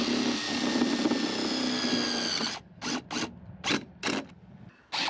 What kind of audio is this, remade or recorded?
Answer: recorded